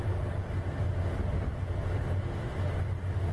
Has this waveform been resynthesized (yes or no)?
no